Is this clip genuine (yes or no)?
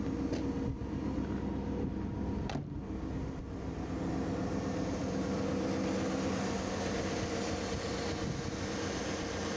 yes